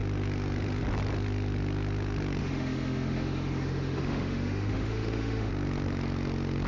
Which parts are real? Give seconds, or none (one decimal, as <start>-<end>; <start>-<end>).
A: 0.0-2.4; 5.5-6.7